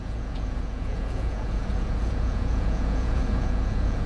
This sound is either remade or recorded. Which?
remade